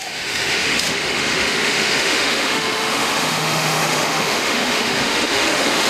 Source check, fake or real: fake